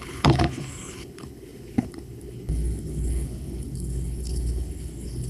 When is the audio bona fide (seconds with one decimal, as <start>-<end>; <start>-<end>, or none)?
none